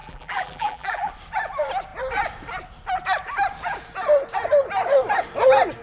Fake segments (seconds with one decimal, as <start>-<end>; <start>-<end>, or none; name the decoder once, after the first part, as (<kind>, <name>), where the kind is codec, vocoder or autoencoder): 0.0-1.1 (vocoder, BigVGAN v2)